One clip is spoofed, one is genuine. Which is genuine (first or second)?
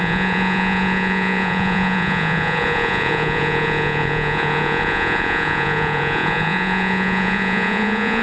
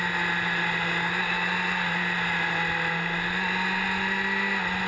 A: second